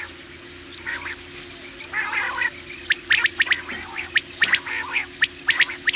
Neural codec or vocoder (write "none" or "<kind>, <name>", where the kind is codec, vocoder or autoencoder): none